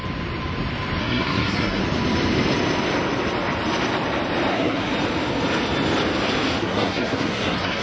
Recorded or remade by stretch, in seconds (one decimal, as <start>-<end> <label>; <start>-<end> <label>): 0.0-1.0 recorded; 1.0-1.8 remade; 1.8-4.5 recorded; 4.5-4.9 remade; 4.9-6.6 recorded; 6.6-7.8 remade